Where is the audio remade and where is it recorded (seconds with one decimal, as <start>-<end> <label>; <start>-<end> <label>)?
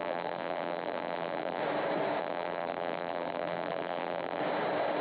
0.0-1.6 remade; 1.6-2.2 recorded; 2.2-4.4 remade; 4.4-5.0 recorded